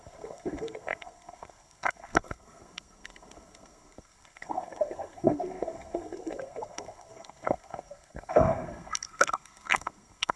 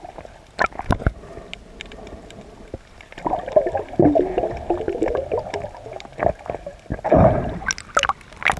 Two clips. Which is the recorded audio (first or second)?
second